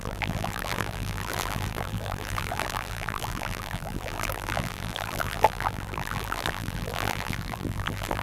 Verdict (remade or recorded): remade